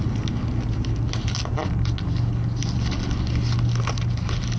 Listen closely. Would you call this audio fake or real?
real